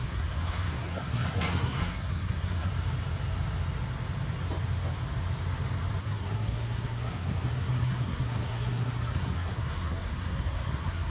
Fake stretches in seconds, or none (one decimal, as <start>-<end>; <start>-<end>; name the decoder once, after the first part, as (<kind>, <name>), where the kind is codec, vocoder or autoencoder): 0.0-2.7 (codec, SNAC); 6.0-11.1